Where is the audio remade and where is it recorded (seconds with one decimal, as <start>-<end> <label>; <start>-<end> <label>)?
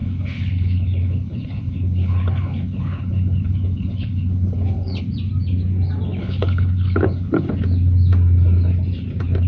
0.0-5.0 remade; 5.0-6.2 recorded; 6.2-7.5 remade; 7.5-9.5 recorded